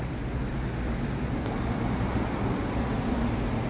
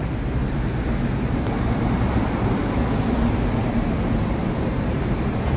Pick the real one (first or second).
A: first